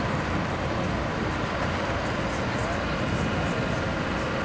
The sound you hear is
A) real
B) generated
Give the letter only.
A